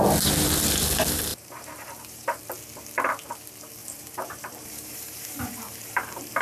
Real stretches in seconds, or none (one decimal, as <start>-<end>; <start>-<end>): 0.0-1.3; 2.4-3.8

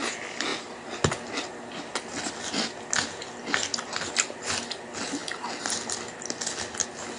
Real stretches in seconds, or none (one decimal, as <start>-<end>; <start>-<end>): 0.0-7.2

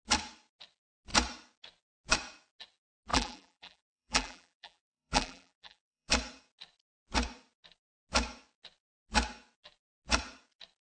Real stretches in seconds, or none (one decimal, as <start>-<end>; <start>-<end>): 0.0-3.1; 6.1-10.9

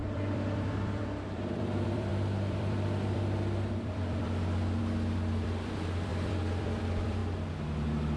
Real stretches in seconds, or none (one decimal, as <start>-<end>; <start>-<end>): 7.2-8.2

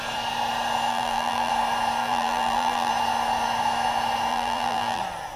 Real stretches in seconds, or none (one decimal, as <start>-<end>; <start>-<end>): 0.0-0.9; 1.5-2.0; 2.9-4.3; 5.0-5.4

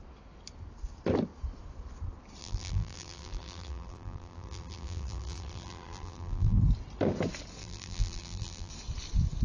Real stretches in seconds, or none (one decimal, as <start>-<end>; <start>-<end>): 0.0-2.4; 6.6-7.6; 8.7-9.4

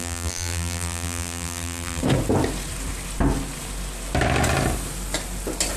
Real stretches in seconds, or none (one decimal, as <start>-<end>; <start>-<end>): 2.0-5.8